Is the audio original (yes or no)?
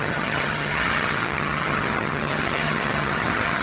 no